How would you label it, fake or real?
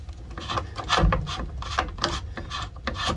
real